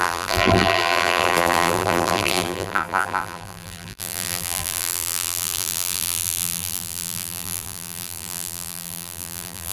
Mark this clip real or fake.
fake